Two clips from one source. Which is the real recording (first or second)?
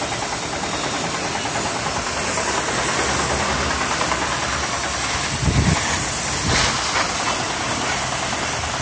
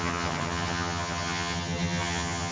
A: first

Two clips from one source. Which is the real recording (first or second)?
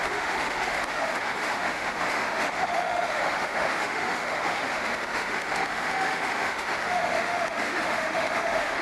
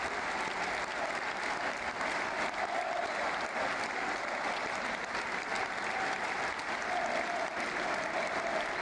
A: second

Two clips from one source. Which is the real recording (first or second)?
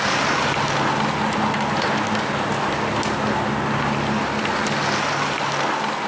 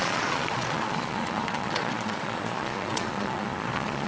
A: first